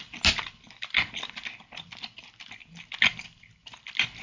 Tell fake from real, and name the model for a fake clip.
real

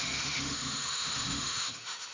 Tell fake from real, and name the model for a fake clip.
fake, autoencoder, DAC-VAE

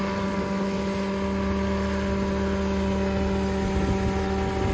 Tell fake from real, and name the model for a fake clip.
real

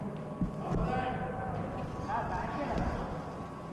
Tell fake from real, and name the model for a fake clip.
real